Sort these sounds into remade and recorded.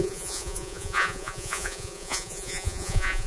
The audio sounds remade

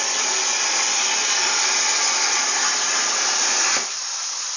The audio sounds recorded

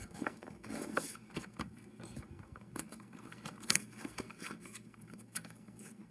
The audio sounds remade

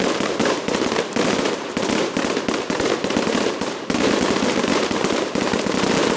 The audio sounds remade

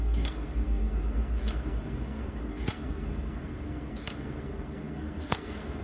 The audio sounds remade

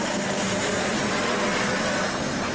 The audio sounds recorded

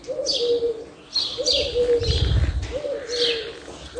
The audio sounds recorded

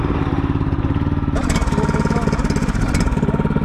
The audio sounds recorded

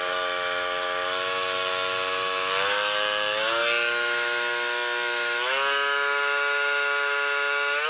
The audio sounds remade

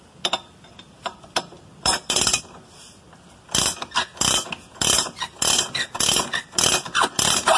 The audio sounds recorded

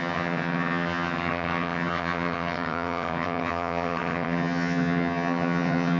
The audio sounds remade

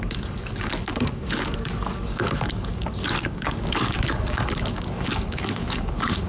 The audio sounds remade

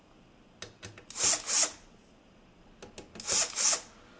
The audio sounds recorded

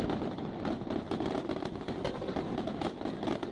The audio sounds recorded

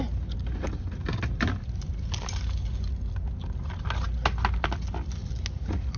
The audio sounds recorded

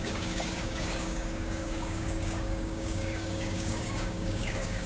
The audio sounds remade